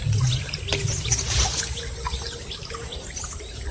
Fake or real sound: real